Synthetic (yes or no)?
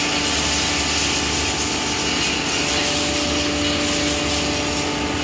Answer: no